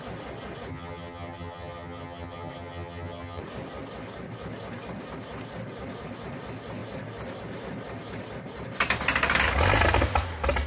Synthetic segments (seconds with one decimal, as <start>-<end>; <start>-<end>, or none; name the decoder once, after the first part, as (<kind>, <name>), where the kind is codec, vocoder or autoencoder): 0.7-3.4 (vocoder, HiFi-GAN)